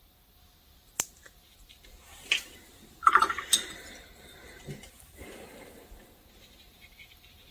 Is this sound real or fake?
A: real